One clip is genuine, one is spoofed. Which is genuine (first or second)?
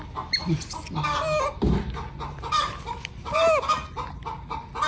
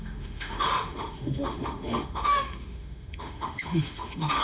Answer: first